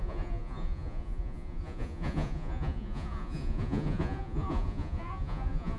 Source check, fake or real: fake